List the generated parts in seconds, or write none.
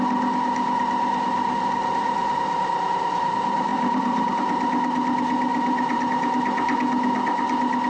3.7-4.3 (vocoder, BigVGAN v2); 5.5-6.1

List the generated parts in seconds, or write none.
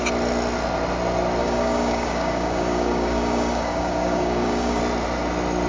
1.4-4.8 (codec, DAC)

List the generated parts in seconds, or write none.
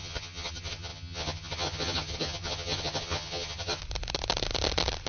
0.0-3.8 (vocoder, HiFi-GAN)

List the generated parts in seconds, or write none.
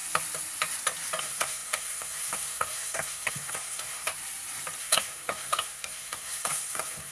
1.2-4.1 (codec, SNAC); 4.8-7.1